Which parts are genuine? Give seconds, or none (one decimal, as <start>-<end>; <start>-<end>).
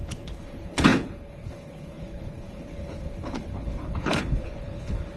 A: none